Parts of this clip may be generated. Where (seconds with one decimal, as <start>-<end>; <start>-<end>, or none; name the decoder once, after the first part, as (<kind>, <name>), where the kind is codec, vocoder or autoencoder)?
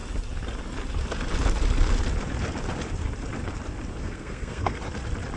4.0-4.8 (codec, SNAC)